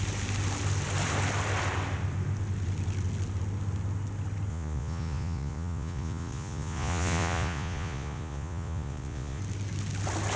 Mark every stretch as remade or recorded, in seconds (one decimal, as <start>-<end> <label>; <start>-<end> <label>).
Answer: 0.0-4.5 recorded; 4.5-9.4 remade; 9.4-10.4 recorded